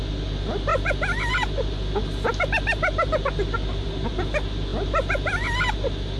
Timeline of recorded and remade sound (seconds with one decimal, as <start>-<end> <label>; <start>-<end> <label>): 0.0-6.2 recorded